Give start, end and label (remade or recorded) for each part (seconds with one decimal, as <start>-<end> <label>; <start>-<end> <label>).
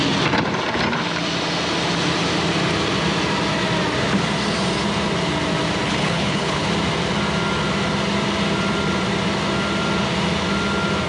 0.0-5.9 recorded; 5.9-6.7 remade; 6.7-11.1 recorded